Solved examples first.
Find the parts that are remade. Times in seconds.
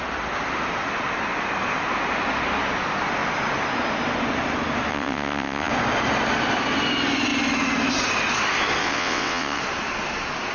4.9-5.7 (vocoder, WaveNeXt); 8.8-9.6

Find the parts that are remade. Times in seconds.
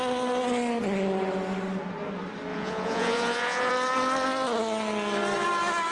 2.5-3.7 (vocoder, Vocos)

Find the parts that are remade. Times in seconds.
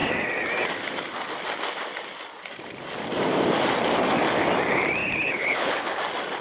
5.0-6.0 (codec, HILCodec)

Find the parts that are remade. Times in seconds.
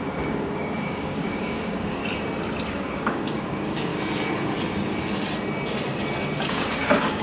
0.0-2.0 (codec, DAC); 2.7-3.9; 6.5-7.2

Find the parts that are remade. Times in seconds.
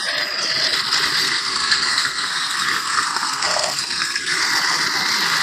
1.2-4.4 (codec, SNAC)